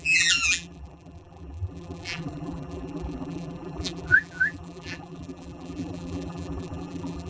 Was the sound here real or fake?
fake